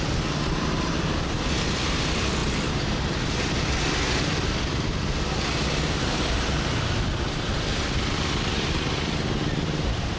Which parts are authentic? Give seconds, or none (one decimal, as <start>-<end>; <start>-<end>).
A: 0.0-10.2